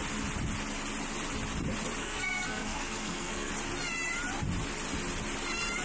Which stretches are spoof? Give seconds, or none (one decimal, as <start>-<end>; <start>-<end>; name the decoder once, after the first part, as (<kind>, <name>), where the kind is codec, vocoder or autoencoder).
2.0-3.5 (codec, SNAC)